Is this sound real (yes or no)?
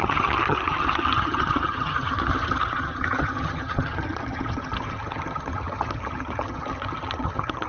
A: no